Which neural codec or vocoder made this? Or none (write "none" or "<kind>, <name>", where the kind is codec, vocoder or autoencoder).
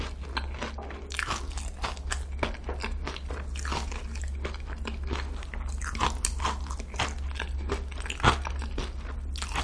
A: none